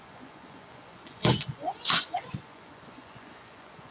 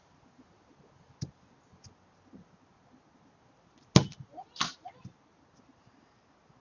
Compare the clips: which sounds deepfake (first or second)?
first